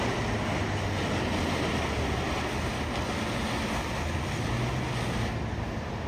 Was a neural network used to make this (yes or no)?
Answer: no